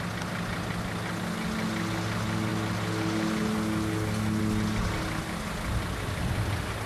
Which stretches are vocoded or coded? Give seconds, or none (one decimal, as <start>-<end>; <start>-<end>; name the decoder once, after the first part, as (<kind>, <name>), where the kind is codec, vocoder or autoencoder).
none